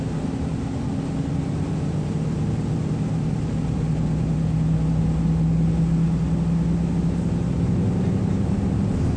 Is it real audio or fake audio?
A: real